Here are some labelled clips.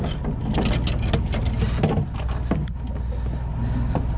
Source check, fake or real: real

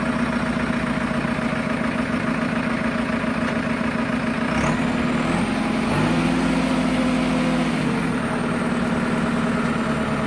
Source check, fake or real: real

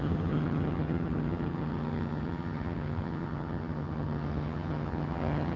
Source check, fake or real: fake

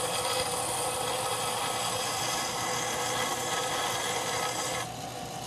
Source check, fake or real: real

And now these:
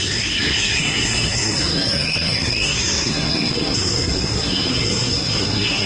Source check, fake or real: fake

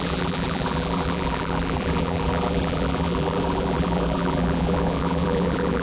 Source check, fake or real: fake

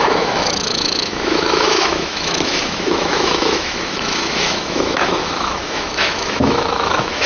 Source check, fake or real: fake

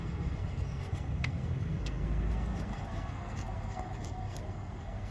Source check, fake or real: fake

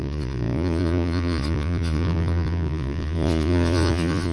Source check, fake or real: fake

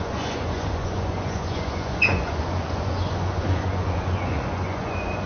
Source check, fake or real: fake